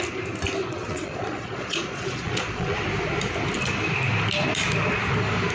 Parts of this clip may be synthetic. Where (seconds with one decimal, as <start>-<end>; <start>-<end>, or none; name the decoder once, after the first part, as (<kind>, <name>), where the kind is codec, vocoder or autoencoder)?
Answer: 0.6-2.8 (vocoder, Vocos)